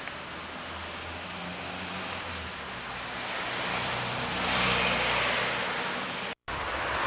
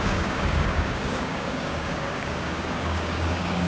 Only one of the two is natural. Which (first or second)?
first